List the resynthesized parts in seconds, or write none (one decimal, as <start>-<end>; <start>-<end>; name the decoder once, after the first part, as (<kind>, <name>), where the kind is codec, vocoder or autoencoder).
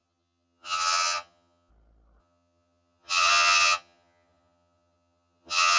0.0-1.7 (vocoder, HiFi-GAN); 2.2-5.8